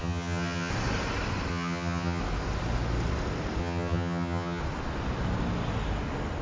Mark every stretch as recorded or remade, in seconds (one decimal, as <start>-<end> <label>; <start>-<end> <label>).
0.0-0.7 remade; 0.7-1.5 recorded; 1.5-2.2 remade; 2.2-3.6 recorded; 3.6-4.6 remade; 4.6-6.4 recorded